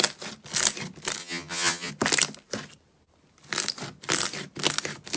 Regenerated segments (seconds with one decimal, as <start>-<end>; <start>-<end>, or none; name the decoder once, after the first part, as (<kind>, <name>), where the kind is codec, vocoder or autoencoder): 1.2-1.9 (vocoder, HiFi-GAN)